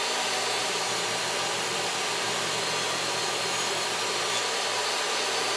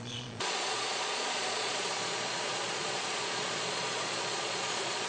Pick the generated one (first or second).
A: second